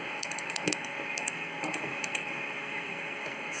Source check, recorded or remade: remade